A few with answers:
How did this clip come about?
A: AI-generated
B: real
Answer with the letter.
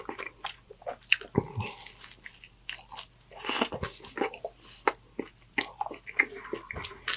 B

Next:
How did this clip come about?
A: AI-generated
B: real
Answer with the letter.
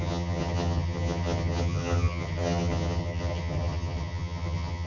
A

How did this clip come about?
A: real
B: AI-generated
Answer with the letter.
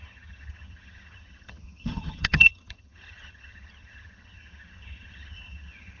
B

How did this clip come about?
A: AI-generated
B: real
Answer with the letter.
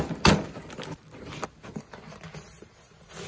B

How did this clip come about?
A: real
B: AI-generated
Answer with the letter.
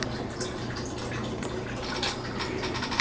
A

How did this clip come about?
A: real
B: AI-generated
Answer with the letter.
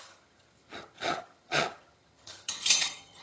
B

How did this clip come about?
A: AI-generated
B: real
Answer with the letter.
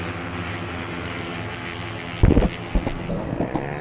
B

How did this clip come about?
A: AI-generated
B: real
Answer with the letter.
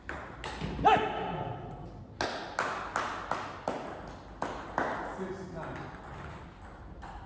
B